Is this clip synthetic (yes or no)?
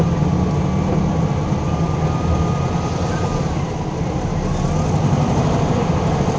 no